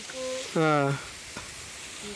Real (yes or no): yes